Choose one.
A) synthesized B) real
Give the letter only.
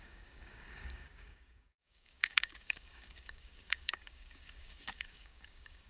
A